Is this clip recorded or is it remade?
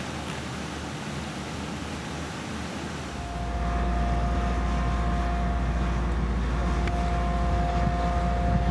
recorded